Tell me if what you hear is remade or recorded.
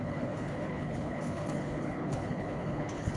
remade